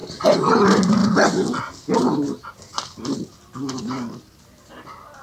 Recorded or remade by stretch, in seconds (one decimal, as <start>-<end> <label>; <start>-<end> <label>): 0.0-0.6 remade; 0.6-5.2 recorded